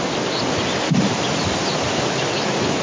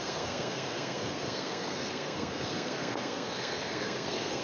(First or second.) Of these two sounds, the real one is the first